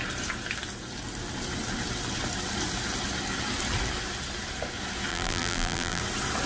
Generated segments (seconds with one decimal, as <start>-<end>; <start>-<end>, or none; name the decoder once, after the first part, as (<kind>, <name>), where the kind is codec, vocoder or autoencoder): 5.1-6.0 (vocoder, BigVGAN v2)